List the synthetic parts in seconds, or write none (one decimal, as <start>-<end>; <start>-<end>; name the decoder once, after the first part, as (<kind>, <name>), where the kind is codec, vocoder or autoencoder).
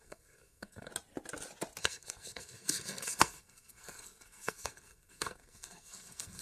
0.0-0.9 (codec, SNAC); 1.8-6.4